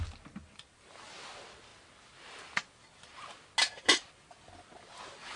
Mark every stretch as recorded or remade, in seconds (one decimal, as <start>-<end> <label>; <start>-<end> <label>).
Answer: 0.0-5.4 recorded